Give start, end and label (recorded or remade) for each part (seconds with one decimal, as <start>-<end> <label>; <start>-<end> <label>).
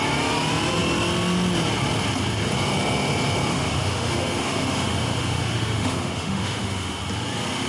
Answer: 0.0-3.5 recorded; 3.5-7.0 remade; 7.0-7.7 recorded